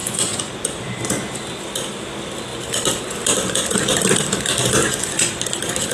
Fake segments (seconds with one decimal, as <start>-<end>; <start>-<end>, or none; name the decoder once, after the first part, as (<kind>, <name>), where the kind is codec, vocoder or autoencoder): 0.0-0.5 (vocoder, Vocos); 4.6-5.3